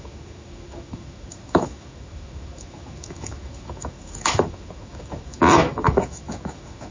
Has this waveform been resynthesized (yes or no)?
yes